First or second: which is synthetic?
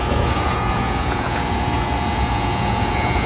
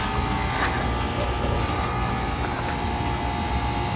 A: first